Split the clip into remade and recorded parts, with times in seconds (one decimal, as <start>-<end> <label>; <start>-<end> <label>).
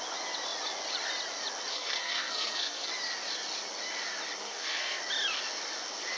0.0-1.7 recorded; 1.7-2.9 remade; 2.9-4.4 recorded; 4.4-5.0 remade; 5.0-6.2 recorded